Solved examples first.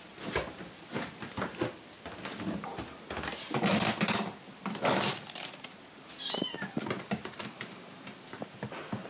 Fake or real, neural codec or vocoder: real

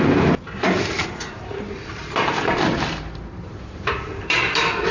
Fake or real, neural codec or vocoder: fake, vocoder, BigVGAN v2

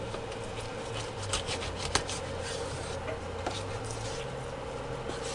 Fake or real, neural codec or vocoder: real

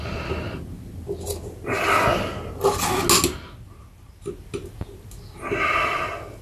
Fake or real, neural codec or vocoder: real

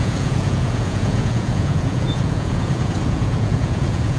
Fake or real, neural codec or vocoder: fake, vocoder, Vocos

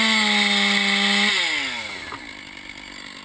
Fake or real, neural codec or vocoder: real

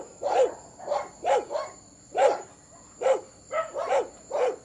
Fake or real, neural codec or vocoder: real